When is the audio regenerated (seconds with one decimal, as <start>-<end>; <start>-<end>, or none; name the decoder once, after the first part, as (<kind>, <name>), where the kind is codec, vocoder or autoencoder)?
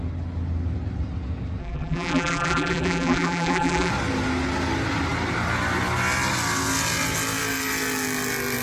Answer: 1.6-3.9 (vocoder, BigVGAN v2)